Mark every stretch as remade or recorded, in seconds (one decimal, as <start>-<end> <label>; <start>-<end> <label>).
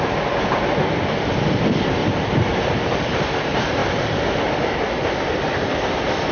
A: 0.0-2.0 recorded; 2.0-3.3 remade; 3.3-3.8 recorded; 3.8-6.3 remade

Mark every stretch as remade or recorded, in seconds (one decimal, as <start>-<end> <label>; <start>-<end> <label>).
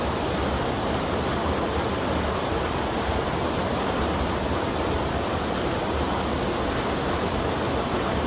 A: 0.0-8.3 recorded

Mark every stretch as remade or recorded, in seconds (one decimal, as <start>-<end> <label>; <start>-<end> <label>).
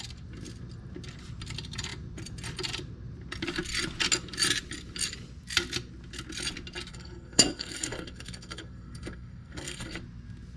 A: 0.0-6.9 recorded; 6.9-10.0 remade; 10.0-10.6 recorded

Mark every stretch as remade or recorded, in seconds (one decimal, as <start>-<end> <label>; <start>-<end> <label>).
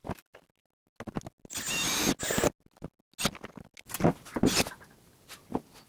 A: 0.0-5.9 recorded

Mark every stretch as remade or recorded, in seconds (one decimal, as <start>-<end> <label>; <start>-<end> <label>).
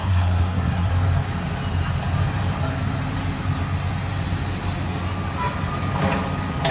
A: 0.0-0.9 remade; 0.9-6.7 recorded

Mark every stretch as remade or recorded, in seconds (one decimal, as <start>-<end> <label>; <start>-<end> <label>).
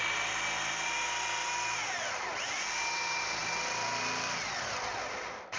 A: 0.0-5.6 recorded